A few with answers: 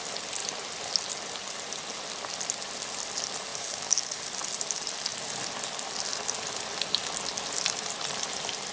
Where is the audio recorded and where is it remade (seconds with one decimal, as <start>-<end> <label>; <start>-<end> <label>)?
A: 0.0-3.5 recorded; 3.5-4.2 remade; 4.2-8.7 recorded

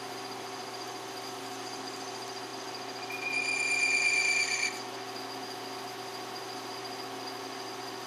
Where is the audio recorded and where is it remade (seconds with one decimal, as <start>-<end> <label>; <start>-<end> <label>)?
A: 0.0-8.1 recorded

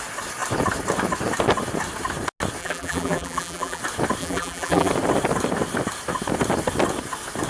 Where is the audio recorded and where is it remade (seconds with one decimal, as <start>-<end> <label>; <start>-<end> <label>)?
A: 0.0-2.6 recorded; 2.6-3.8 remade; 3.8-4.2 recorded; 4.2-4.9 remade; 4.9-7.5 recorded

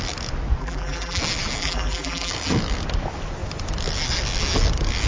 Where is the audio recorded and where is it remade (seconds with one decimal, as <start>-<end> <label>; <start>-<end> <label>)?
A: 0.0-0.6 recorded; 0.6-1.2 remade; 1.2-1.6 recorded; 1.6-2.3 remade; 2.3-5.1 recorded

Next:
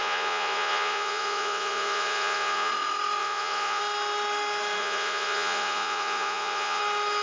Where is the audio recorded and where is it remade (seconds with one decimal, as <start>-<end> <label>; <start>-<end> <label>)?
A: 0.0-2.7 remade; 2.7-3.2 recorded; 3.2-3.8 remade; 3.8-4.8 recorded; 4.8-6.8 remade; 6.8-7.2 recorded